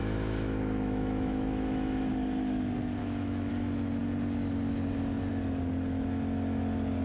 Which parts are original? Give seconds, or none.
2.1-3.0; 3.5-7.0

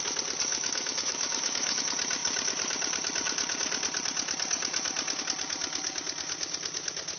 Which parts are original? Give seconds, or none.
0.0-0.5; 1.8-7.2

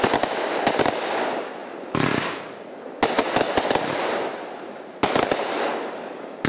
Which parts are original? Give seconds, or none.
0.0-6.5

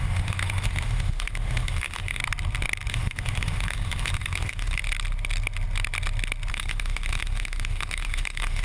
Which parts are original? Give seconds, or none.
2.2-2.9; 4.8-6.5

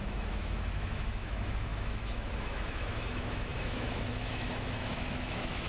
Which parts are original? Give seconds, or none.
none

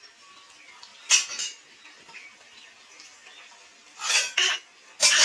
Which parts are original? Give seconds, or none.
0.0-5.2